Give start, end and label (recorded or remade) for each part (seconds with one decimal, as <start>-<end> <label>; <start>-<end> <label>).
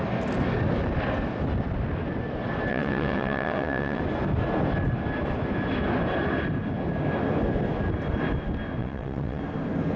0.0-2.7 recorded; 2.7-4.0 remade; 4.0-8.8 recorded; 8.8-9.4 remade; 9.4-10.0 recorded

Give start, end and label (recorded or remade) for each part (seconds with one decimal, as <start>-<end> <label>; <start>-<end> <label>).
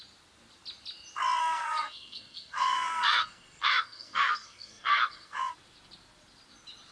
0.0-1.4 recorded; 1.4-5.5 remade; 5.5-6.9 recorded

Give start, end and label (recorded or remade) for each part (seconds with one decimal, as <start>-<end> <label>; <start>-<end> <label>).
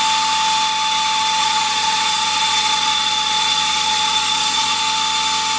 0.0-1.4 recorded; 1.4-4.8 remade; 4.8-5.6 recorded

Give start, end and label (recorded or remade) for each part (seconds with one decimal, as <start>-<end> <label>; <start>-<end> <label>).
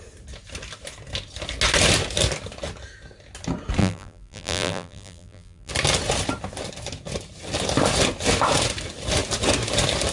0.0-3.8 recorded; 3.8-5.7 remade; 5.7-10.1 recorded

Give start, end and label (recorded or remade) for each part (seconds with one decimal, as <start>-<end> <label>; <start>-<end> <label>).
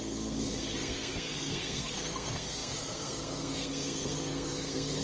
0.0-5.0 remade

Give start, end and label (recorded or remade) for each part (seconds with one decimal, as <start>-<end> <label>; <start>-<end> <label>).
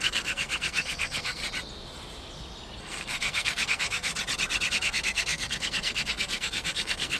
0.0-1.4 remade; 1.4-2.8 recorded; 2.8-4.1 remade; 4.1-4.7 recorded; 4.7-7.2 remade